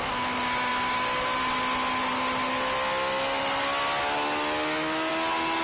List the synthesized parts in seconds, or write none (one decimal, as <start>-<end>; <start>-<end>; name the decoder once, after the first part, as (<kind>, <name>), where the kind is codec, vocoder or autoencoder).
none